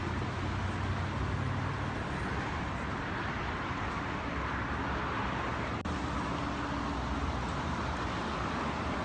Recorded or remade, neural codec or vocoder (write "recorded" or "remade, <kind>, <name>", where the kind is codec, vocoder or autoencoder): recorded